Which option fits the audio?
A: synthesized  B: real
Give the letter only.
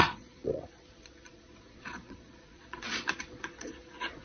A